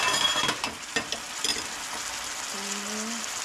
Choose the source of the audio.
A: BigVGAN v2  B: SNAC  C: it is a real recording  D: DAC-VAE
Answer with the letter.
C